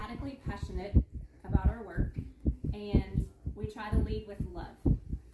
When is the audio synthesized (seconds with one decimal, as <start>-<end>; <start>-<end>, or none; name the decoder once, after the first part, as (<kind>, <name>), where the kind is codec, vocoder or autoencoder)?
none